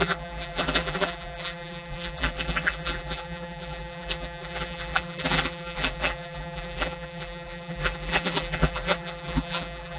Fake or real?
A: fake